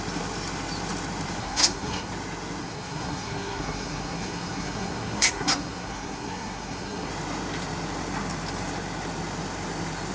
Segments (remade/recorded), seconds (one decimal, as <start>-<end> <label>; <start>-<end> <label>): 0.0-1.4 recorded; 1.4-2.1 remade; 2.1-2.6 recorded; 2.6-7.1 remade; 7.1-10.1 recorded